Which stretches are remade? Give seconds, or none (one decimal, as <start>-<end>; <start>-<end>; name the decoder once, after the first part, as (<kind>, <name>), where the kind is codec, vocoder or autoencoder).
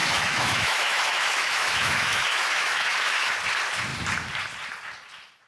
0.0-3.3 (autoencoder, DAC-VAE)